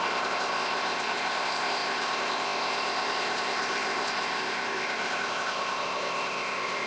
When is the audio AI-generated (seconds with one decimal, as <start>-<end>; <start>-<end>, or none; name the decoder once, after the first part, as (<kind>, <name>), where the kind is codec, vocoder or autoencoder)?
0.0-6.9 (codec, ZipCodec)

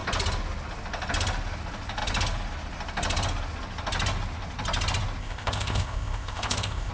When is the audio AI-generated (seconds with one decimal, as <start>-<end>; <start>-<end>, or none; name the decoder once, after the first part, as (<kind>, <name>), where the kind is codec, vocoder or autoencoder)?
5.2-6.9 (codec, ZipCodec)